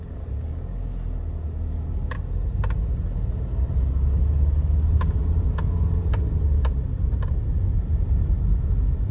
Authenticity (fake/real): real